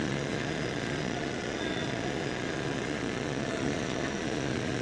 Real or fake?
fake